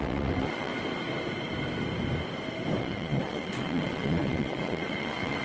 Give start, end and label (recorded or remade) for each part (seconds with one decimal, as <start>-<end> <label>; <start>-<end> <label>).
0.0-0.7 remade; 0.7-2.8 recorded; 2.8-5.4 remade